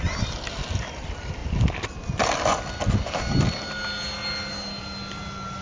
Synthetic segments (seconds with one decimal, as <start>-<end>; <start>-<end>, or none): none